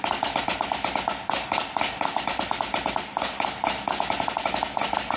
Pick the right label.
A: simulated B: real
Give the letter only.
B